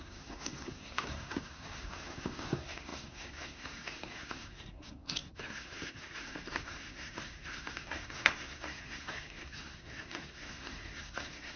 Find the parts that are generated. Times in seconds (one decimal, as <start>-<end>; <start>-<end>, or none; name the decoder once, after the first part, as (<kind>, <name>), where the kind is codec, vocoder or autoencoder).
0.0-11.6 (codec, SNAC)